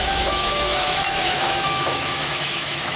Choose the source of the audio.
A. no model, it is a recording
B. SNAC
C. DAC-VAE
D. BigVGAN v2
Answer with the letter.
C